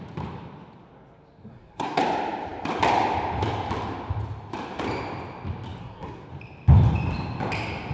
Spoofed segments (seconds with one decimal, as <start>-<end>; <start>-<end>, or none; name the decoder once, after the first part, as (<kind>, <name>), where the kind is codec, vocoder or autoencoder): 1.5-2.0 (codec, SNAC); 5.8-6.3